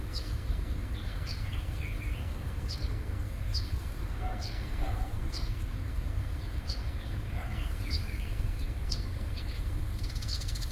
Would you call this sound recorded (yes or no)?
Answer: no